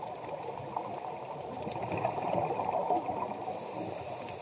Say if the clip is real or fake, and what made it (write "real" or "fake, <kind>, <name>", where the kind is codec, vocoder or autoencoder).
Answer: fake, vocoder, BigVGAN v2